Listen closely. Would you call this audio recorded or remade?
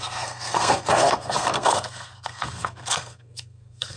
remade